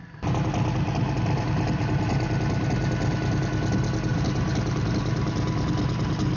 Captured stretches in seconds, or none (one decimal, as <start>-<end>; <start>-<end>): 0.0-4.1; 4.9-6.4